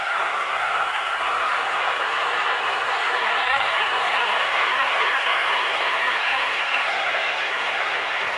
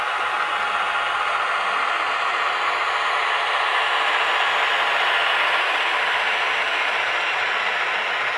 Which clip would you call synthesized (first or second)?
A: first